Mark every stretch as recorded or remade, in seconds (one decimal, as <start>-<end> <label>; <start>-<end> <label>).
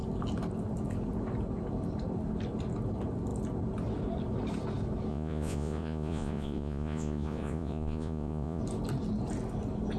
0.0-5.1 recorded; 5.1-8.6 remade; 8.6-10.0 recorded